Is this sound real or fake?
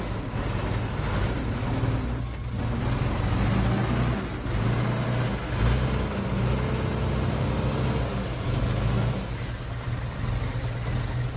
real